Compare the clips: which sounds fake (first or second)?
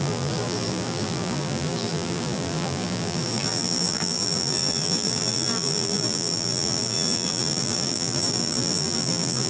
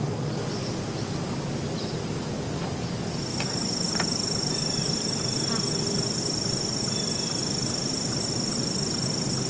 first